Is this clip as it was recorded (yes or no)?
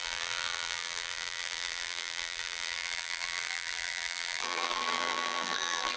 no